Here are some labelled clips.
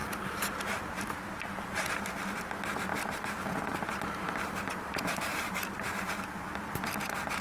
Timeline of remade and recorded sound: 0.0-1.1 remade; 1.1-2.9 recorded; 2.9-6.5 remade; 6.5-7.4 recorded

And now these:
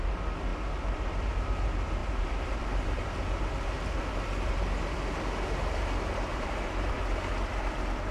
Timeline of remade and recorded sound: 0.0-0.5 recorded; 0.5-1.2 remade; 1.2-2.0 recorded; 2.0-4.1 remade; 4.1-6.3 recorded; 6.3-7.0 remade; 7.0-8.1 recorded

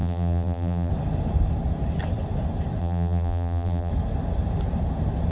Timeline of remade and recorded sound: 0.0-0.9 remade; 0.9-2.8 recorded; 2.8-3.9 remade; 3.9-5.3 recorded

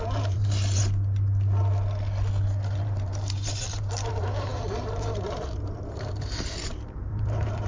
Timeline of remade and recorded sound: 0.0-0.8 remade; 0.8-2.8 recorded; 2.8-7.7 remade

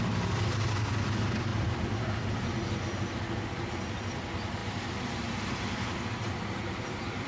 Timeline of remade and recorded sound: 0.0-1.5 recorded; 1.5-2.3 remade; 2.3-4.6 recorded; 4.6-7.3 remade

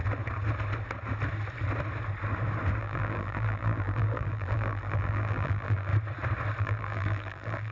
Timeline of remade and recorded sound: 0.0-2.8 recorded; 2.8-5.9 remade; 5.9-6.6 recorded; 6.6-7.7 remade

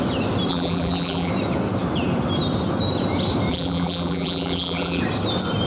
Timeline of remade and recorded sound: 0.0-0.5 recorded; 0.5-1.3 remade; 1.3-3.5 recorded; 3.5-5.0 remade; 5.0-5.7 recorded